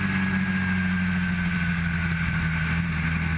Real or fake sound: real